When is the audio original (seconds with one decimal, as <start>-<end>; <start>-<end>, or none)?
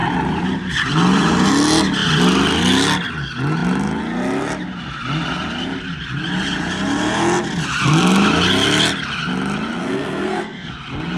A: 0.0-9.8; 10.7-11.2